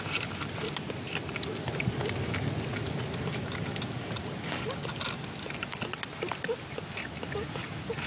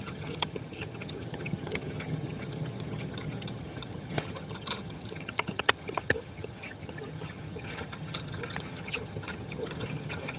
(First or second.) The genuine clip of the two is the first